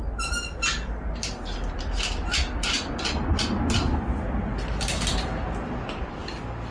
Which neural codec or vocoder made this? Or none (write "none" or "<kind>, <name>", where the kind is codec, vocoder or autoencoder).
none